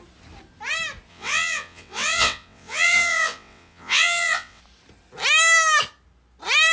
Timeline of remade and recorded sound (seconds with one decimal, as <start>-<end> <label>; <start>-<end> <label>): 0.0-1.1 recorded; 1.1-4.6 remade; 4.6-6.7 recorded